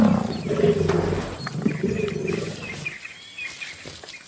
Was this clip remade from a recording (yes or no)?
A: no